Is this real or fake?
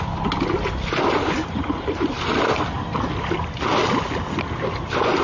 real